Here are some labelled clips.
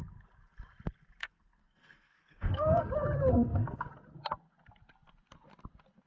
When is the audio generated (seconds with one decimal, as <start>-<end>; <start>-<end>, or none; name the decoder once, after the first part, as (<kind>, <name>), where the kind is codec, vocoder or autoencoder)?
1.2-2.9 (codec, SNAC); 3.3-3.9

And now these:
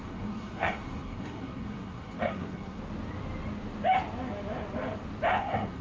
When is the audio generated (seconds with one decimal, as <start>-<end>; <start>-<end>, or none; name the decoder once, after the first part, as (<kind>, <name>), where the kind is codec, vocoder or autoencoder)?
0.0-2.8 (codec, SNAC); 5.3-5.8

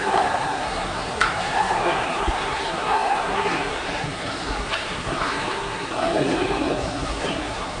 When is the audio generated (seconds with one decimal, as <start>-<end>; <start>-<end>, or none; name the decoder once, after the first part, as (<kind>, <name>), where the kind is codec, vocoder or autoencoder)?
0.0-7.8 (codec, SNAC)

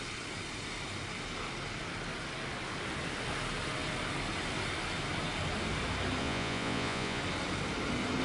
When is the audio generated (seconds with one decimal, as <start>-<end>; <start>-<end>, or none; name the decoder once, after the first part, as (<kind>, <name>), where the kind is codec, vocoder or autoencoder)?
6.2-7.2 (vocoder, Vocos)

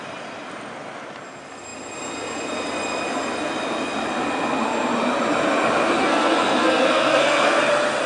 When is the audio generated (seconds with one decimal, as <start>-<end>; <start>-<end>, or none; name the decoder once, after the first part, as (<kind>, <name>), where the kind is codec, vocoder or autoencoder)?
6.0-7.6 (codec, SNAC)

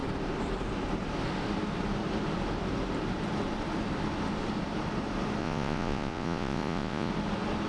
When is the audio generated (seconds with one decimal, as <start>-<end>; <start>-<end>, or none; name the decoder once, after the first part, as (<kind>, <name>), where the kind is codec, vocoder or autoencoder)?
5.4-7.1 (vocoder, Vocos)